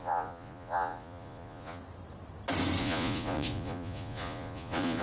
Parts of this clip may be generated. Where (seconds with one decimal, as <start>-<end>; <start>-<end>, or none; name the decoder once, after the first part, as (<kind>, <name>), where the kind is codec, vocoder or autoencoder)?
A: 0.0-1.8 (vocoder, Vocos); 2.8-5.0